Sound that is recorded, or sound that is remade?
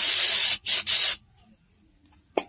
remade